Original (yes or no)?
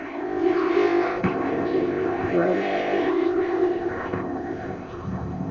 no